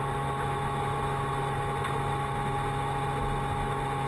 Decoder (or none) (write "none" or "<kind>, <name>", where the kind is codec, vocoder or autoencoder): none